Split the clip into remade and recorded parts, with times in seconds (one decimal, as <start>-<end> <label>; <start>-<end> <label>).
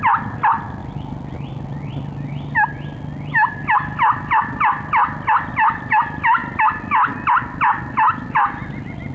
0.0-9.1 recorded